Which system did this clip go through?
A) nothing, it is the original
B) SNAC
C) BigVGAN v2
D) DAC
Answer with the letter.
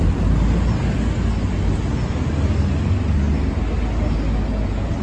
A